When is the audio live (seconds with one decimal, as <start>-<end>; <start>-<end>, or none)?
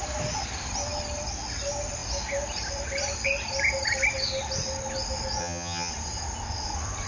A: 0.0-5.4; 5.9-7.1